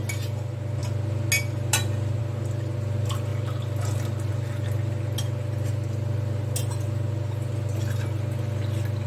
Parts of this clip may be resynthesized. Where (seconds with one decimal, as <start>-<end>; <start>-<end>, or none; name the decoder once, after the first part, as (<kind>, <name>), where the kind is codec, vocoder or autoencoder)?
none